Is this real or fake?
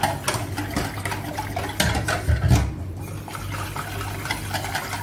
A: real